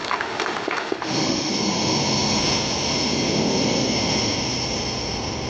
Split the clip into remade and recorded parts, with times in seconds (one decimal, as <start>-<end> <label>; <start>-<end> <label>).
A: 0.0-1.5 remade; 1.5-5.5 recorded